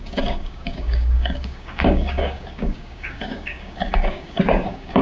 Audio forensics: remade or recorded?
remade